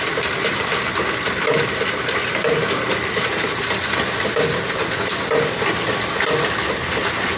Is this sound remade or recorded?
recorded